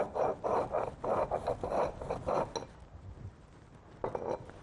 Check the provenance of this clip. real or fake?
real